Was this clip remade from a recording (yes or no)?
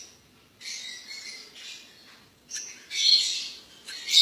no